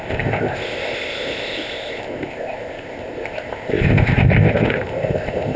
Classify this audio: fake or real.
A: fake